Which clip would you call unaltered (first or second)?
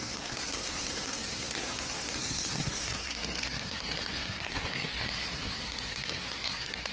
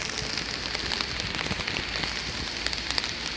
second